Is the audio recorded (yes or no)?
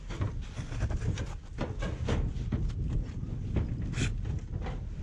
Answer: yes